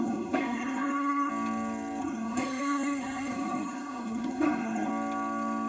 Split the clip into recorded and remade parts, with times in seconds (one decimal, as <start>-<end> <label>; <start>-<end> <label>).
0.0-1.3 remade; 1.3-2.0 recorded; 2.0-4.9 remade; 4.9-5.7 recorded